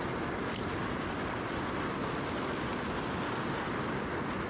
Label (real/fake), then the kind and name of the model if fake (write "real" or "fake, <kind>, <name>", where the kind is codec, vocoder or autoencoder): real